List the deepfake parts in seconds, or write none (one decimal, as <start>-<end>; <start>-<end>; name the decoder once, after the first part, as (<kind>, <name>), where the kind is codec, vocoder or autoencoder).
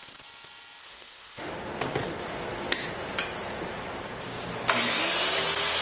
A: 0.8-1.5 (autoencoder, DAC-VAE)